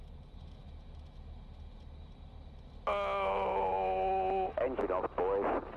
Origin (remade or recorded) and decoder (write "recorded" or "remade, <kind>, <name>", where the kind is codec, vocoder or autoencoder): recorded